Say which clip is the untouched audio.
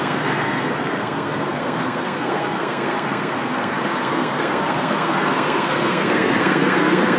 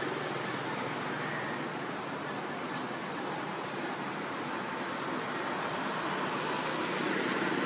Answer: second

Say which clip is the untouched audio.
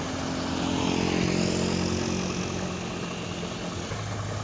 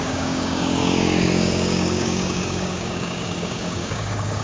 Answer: first